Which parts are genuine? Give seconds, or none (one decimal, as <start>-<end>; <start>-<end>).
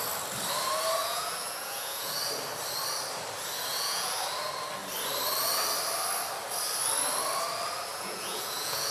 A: 0.0-1.0; 2.3-3.7; 4.2-7.9